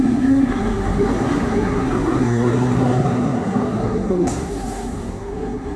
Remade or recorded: remade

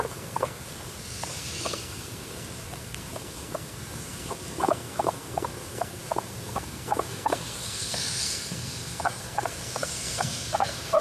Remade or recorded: remade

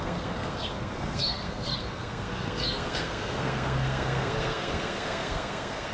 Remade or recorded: remade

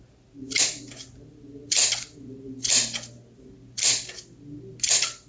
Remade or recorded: recorded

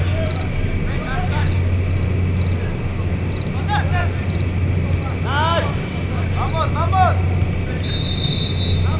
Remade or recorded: recorded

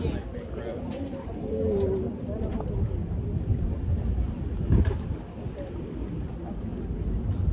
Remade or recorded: recorded